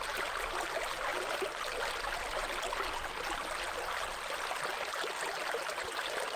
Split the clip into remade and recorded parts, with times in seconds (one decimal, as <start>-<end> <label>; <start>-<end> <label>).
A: 0.0-6.4 recorded